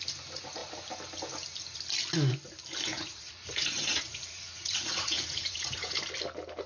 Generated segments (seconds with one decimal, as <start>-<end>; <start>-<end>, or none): 2.9-6.0